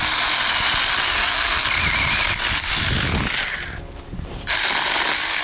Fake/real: real